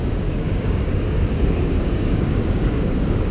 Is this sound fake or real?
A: fake